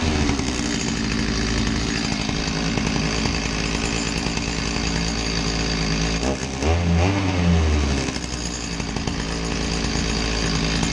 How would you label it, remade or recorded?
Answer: recorded